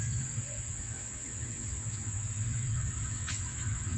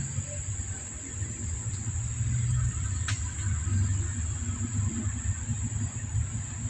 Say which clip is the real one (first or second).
second